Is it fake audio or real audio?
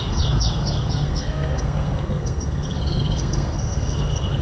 fake